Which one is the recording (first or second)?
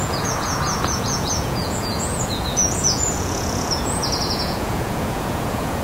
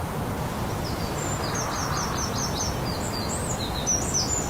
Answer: second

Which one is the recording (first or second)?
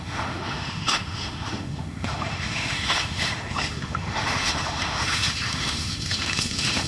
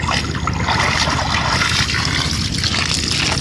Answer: second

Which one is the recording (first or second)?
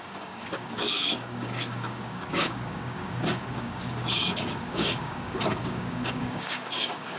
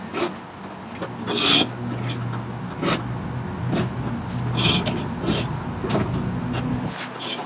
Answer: second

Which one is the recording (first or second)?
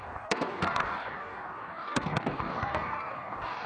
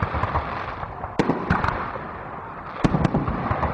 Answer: second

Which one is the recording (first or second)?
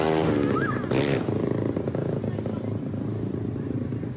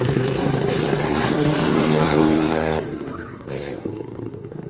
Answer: first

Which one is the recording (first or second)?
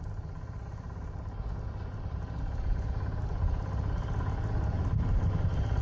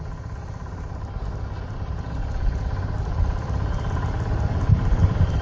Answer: first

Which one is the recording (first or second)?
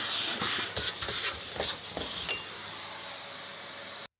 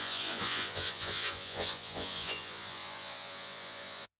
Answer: first